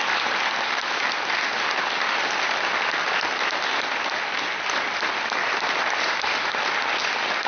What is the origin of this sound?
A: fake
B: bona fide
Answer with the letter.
B